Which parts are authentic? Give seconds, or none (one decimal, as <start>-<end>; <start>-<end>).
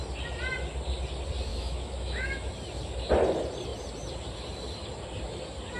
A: 0.0-1.5; 2.5-5.8